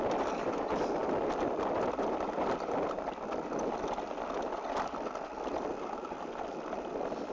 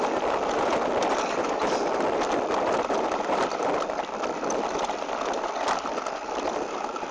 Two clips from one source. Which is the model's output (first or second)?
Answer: second